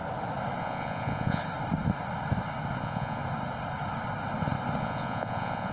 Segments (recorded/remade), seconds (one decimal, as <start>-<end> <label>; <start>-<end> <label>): 0.0-0.6 recorded; 0.6-1.4 remade; 1.4-2.8 recorded; 2.8-3.2 remade; 3.2-4.8 recorded; 4.8-5.7 remade